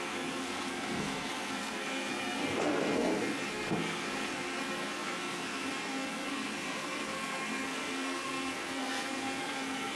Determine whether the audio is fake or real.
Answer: fake